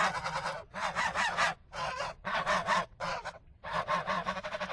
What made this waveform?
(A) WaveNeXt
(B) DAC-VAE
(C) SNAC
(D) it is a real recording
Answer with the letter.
A